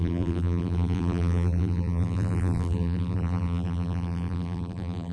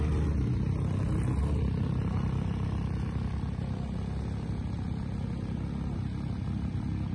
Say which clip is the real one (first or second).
second